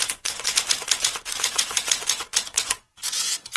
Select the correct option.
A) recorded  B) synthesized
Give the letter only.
B